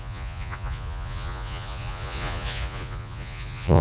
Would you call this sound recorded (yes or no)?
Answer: no